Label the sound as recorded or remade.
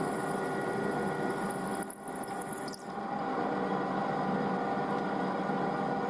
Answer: recorded